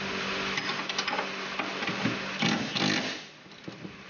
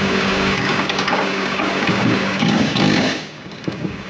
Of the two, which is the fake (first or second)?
second